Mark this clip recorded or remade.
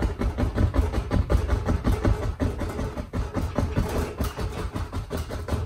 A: recorded